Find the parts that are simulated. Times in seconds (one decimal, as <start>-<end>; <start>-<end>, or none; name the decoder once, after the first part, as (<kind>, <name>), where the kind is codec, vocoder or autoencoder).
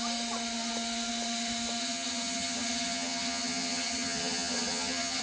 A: 1.8-5.2 (vocoder, HiFi-GAN)